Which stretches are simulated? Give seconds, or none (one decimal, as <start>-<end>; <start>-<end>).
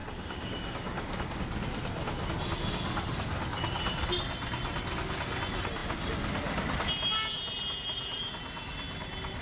0.0-1.4